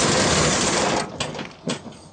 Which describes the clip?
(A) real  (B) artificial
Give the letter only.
A